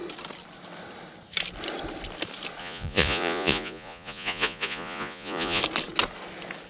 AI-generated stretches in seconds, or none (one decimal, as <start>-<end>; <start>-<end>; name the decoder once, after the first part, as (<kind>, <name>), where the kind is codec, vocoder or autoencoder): 2.6-5.6 (vocoder, Vocos)